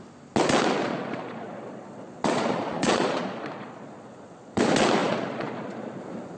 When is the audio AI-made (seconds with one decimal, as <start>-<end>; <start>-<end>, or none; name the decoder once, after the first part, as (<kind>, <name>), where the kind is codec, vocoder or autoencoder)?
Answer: 0.8-4.6 (vocoder, Vocos); 5.0-6.0